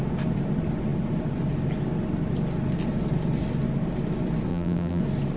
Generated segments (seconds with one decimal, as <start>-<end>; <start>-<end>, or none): 4.5-5.0